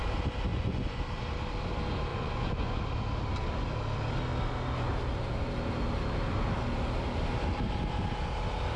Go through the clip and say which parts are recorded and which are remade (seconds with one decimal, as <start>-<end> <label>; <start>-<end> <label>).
0.0-0.5 recorded; 0.5-1.0 remade; 1.0-2.1 recorded; 2.1-2.8 remade; 2.8-8.8 recorded